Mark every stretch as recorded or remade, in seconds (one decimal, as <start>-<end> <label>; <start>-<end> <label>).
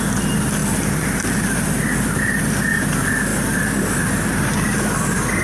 0.0-0.6 recorded; 0.6-1.6 remade; 1.6-5.4 recorded